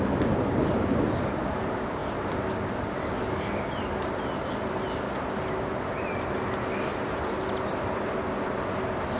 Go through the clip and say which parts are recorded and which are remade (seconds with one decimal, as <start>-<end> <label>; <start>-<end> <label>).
0.0-9.2 recorded